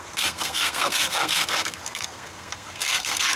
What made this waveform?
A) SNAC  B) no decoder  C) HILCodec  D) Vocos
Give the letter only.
A